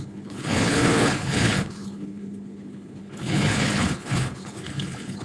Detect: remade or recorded remade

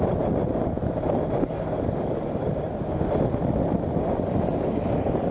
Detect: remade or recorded recorded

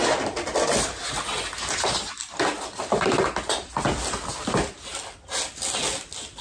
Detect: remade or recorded recorded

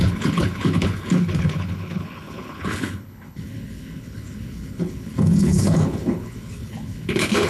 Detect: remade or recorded remade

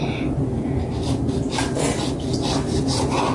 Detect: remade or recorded recorded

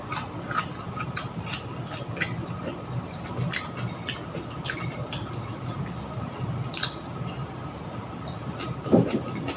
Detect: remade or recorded recorded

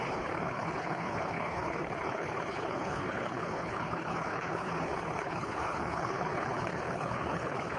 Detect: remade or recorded remade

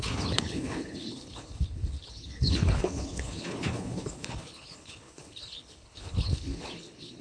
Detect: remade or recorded remade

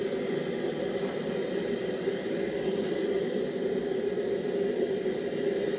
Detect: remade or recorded recorded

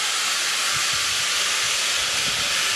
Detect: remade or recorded recorded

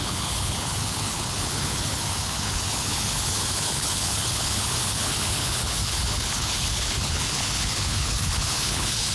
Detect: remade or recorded remade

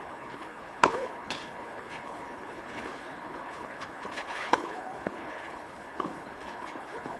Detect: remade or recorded remade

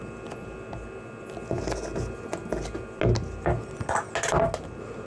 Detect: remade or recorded recorded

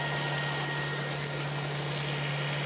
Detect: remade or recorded recorded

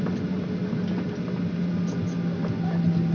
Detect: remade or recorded recorded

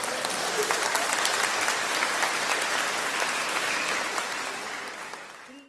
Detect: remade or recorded recorded